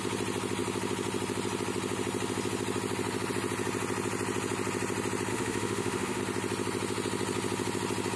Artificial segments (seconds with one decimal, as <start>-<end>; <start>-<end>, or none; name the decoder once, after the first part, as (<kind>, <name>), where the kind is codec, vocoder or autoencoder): 5.3-6.2 (autoencoder, DAC-VAE)